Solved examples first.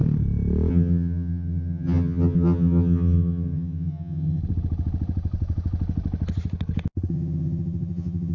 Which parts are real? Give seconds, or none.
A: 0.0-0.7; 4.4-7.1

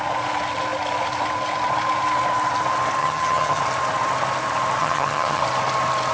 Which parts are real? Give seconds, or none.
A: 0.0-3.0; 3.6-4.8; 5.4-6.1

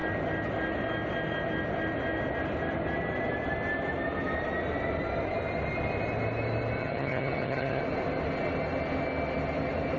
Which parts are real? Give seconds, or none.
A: 0.0-6.8; 7.8-10.0